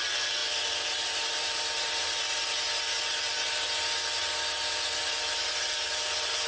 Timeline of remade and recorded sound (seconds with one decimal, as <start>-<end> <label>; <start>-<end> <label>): 0.0-6.5 recorded